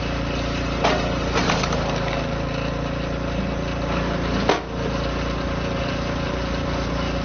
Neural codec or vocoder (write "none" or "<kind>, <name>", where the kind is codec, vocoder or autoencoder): none